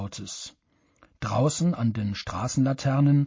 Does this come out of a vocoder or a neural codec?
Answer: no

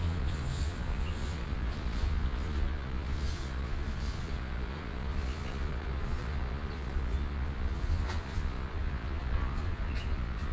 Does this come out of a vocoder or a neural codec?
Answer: yes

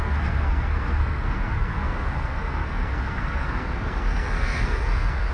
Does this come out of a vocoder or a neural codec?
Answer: yes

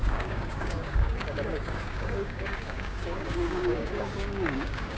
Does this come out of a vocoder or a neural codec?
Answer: yes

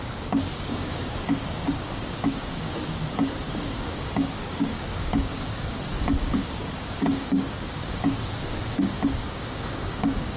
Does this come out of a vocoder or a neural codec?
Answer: yes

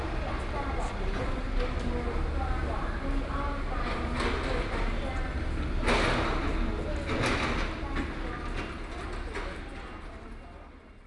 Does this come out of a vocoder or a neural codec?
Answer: no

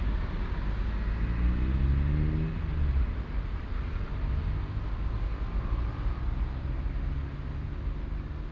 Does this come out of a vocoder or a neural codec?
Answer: no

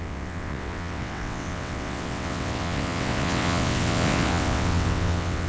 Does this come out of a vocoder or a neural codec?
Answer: yes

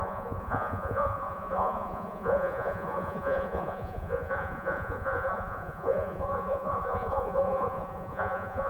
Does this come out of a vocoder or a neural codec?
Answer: yes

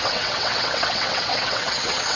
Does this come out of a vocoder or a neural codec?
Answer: yes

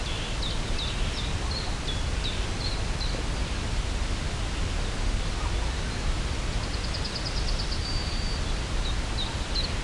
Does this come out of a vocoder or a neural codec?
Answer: no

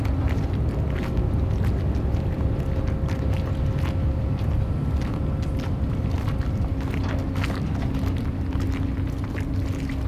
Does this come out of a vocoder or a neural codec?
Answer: no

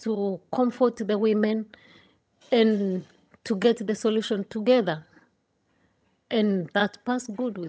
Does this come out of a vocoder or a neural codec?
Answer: yes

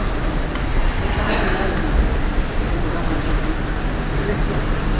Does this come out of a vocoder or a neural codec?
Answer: no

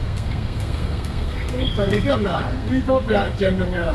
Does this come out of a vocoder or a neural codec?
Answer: yes